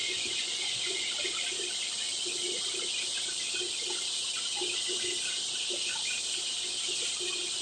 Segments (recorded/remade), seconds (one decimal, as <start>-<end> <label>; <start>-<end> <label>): 0.0-1.0 remade; 1.0-7.6 recorded